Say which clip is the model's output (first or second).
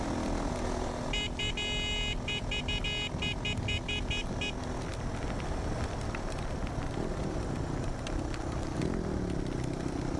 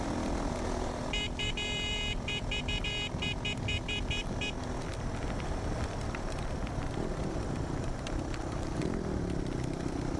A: second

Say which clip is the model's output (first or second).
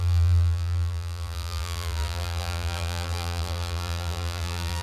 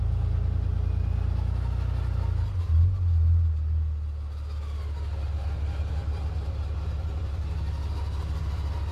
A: first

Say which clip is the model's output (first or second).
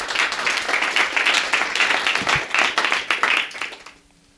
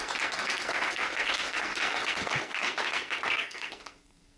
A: second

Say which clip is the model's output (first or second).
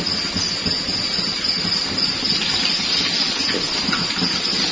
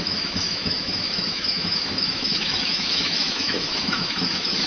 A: second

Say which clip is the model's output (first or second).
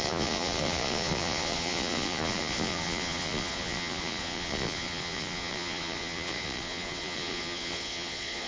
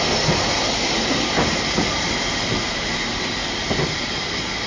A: first